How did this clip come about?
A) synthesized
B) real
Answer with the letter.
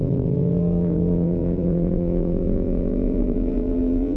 A